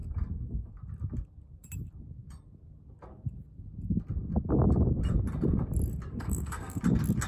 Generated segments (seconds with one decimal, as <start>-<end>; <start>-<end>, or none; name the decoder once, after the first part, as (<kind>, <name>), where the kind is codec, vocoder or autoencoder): 0.0-0.7 (codec, SNAC); 6.1-6.8